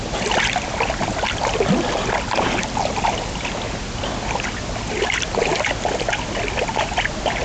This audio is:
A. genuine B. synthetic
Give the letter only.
A